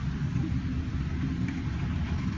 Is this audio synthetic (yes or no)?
no